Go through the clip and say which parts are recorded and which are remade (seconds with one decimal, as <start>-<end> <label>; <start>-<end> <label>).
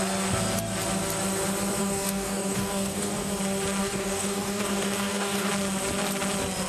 0.0-1.8 recorded; 1.8-3.3 remade; 3.3-3.8 recorded; 3.8-5.5 remade; 5.5-6.7 recorded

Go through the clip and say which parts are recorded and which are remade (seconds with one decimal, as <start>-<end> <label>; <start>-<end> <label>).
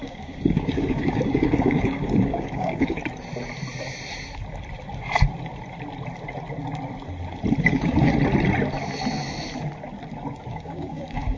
0.0-3.0 remade; 3.0-7.6 recorded; 7.6-8.1 remade; 8.1-10.5 recorded; 10.5-11.4 remade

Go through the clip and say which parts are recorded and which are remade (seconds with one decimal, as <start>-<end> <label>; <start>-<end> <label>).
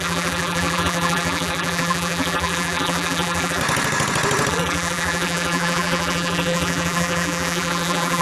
0.0-3.6 remade; 3.6-4.5 recorded; 4.5-8.2 remade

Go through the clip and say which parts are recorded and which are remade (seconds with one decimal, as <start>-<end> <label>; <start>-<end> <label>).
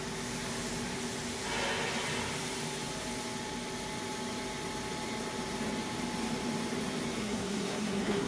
0.0-7.2 recorded; 7.2-8.3 remade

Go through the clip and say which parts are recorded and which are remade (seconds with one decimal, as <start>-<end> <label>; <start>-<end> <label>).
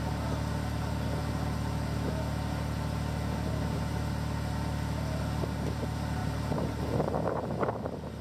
0.0-6.2 recorded; 6.2-6.7 remade; 6.7-8.2 recorded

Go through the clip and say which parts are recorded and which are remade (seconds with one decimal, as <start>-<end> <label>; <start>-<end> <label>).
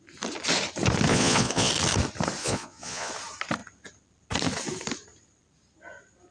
0.0-1.1 recorded; 1.1-1.7 remade; 1.7-2.4 recorded; 2.4-3.1 remade; 3.1-6.3 recorded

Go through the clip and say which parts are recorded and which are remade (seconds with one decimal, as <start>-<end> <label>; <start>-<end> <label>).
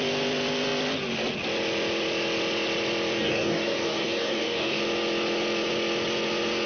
0.0-3.2 recorded; 3.2-4.8 remade; 4.8-6.7 recorded